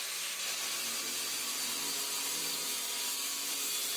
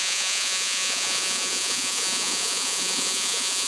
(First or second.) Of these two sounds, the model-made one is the second